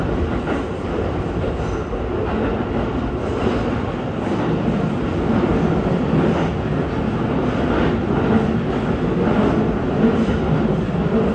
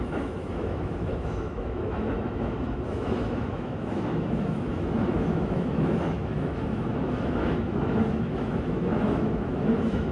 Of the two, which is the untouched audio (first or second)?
first